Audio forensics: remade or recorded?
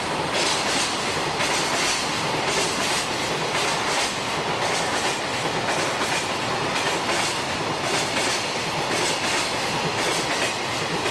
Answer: recorded